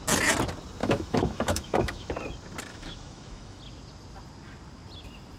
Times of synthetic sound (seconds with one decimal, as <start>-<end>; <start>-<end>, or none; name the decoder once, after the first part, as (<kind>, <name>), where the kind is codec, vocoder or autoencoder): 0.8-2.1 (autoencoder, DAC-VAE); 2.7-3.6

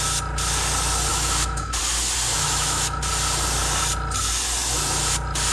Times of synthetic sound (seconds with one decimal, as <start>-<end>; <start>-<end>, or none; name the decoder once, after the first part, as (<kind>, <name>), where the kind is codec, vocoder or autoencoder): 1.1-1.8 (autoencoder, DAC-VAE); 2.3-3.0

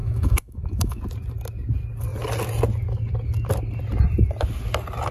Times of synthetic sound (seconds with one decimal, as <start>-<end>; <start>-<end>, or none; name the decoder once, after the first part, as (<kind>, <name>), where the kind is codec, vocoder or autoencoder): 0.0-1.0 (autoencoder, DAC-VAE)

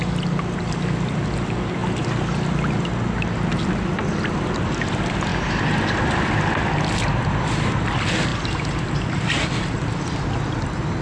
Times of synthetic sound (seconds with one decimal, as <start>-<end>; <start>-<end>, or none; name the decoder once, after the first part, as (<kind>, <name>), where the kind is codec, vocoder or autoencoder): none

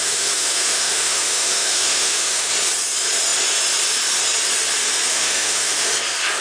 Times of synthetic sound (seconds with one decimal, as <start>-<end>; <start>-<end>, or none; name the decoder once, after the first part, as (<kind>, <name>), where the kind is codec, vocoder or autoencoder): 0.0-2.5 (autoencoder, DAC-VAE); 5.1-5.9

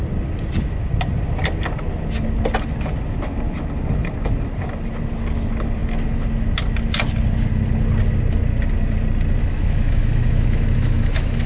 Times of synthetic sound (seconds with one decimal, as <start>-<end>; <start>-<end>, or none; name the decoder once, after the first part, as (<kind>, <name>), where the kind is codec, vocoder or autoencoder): 9.4-11.5 (autoencoder, DAC-VAE)